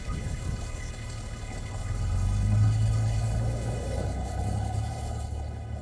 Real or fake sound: fake